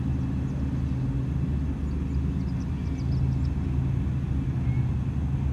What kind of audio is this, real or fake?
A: real